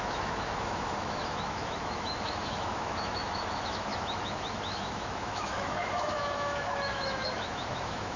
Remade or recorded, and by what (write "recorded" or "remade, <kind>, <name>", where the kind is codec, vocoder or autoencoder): remade, autoencoder, DAC-VAE